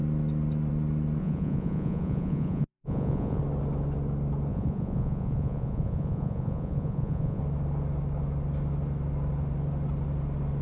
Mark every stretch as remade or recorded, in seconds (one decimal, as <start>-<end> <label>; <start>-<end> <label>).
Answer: 0.0-1.2 recorded; 1.2-3.4 remade; 3.4-4.5 recorded; 4.5-7.4 remade; 7.4-10.6 recorded